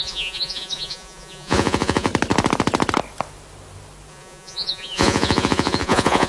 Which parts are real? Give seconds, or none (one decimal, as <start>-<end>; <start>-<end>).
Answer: 2.1-4.1